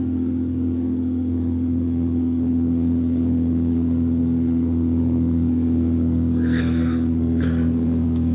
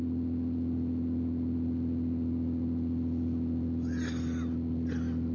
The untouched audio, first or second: second